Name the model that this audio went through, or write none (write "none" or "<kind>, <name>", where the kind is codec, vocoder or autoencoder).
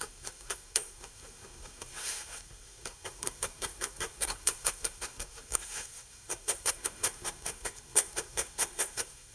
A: codec, SNAC